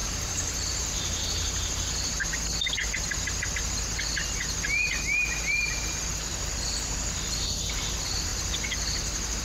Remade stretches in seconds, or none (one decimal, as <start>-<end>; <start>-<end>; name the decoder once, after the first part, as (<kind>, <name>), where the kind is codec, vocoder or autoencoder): 0.0-2.1 (vocoder, BigVGAN v2)